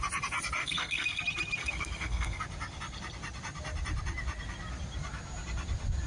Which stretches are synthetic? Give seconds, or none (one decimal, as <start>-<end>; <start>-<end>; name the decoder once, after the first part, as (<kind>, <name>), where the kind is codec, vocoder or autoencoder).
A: 0.6-1.2 (codec, SNAC); 1.6-2.4